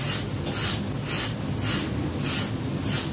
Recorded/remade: recorded